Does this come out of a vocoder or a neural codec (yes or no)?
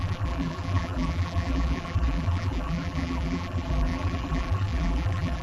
yes